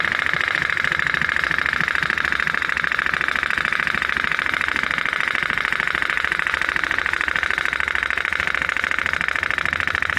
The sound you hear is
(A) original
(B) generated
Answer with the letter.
A